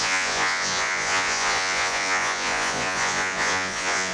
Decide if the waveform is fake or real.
fake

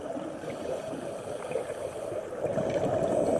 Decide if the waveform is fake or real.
real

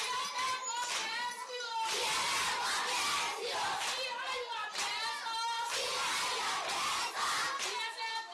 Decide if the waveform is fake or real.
real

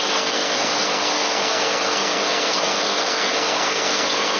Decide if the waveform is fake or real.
fake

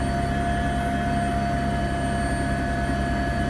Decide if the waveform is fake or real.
real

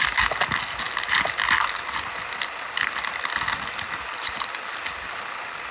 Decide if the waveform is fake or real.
real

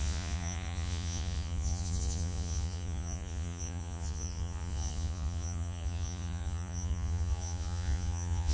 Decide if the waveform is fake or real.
fake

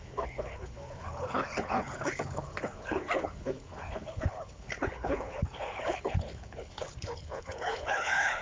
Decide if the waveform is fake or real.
fake